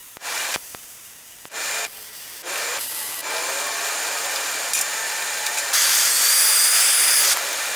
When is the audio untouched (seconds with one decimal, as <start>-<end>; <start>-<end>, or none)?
1.1-7.8

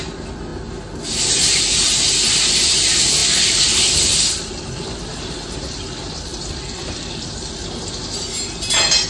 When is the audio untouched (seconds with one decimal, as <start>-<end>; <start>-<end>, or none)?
0.0-3.2; 4.9-6.3; 7.5-9.1

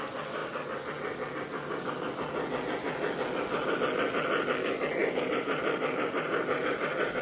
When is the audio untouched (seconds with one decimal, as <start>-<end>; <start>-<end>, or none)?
0.0-5.0

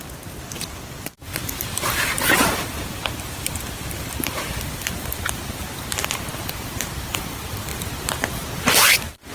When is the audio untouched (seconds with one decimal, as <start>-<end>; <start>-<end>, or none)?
0.0-6.3; 7.3-7.7; 8.9-9.3

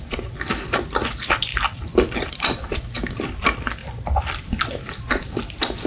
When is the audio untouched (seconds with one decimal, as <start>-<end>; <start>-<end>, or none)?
1.5-2.3

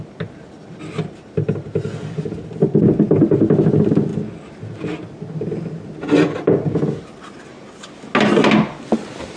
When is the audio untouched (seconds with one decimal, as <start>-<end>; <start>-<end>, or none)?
0.0-9.4

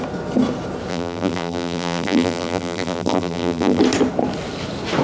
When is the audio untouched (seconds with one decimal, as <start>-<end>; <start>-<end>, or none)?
0.0-0.9; 3.8-5.0

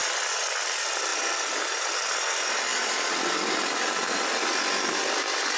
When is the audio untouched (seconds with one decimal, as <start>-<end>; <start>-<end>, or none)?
0.0-1.1; 1.6-2.7; 4.2-5.6